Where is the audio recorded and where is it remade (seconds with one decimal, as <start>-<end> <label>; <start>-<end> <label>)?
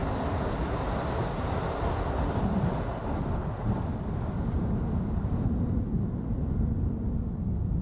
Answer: 0.0-7.8 recorded